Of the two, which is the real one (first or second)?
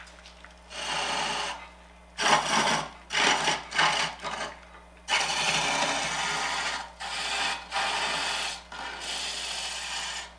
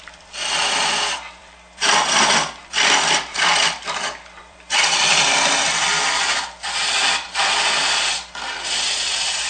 first